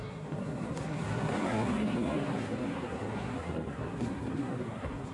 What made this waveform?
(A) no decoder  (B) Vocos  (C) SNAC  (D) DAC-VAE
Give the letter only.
C